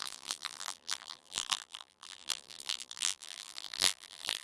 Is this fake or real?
fake